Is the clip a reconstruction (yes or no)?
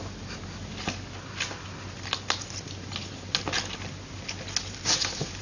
no